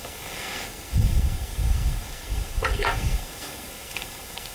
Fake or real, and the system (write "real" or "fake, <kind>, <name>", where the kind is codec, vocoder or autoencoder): fake, codec, SNAC